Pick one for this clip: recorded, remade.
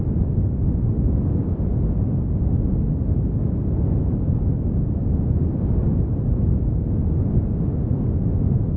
recorded